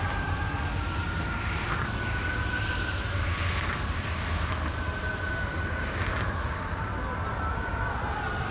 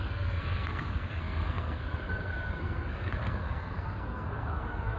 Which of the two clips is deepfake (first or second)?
second